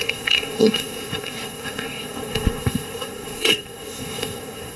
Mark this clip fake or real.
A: fake